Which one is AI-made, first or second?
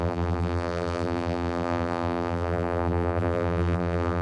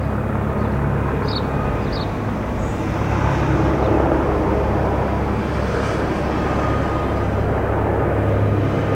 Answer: first